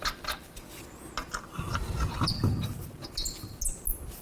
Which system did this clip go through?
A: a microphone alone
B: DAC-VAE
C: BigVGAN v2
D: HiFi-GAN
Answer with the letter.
A